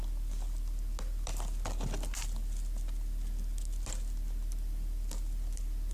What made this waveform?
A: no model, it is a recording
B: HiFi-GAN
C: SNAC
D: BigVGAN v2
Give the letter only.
A